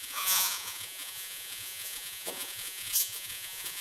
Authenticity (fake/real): fake